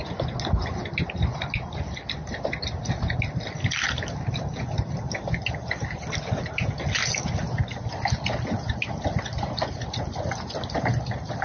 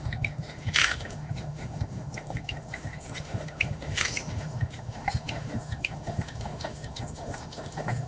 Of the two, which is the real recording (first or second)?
first